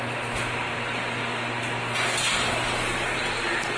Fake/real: real